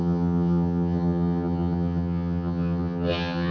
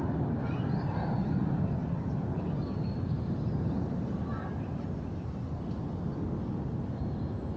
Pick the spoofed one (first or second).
first